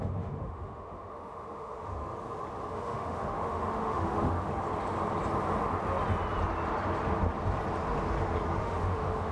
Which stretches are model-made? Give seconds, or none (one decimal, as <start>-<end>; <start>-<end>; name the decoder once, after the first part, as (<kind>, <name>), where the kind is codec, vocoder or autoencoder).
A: 0.0-1.9 (autoencoder, DAC-VAE); 2.7-4.5; 8.6-9.3